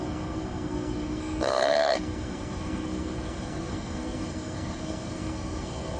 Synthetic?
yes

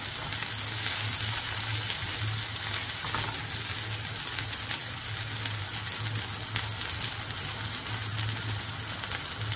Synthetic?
no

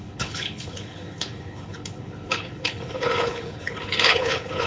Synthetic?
yes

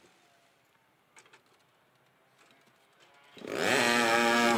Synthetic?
no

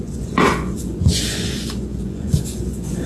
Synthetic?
yes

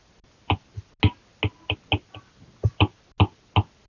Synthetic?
no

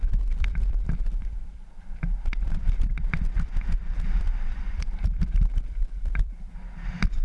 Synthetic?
yes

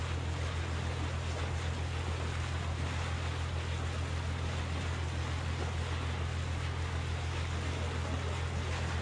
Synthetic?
no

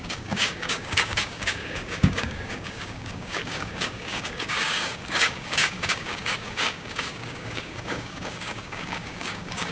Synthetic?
yes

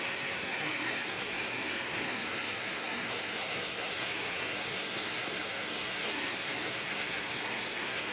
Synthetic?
yes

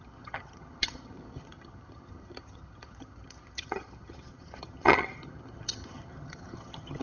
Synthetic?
yes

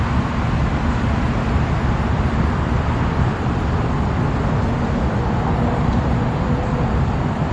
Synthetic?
no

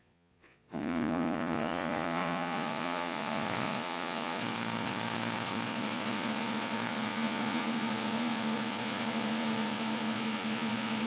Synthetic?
yes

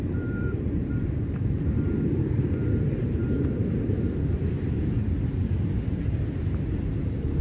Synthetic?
yes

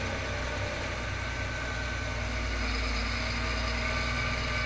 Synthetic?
no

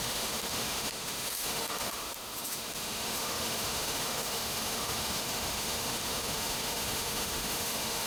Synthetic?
yes